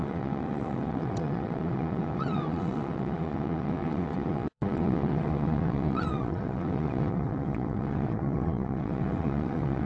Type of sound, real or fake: fake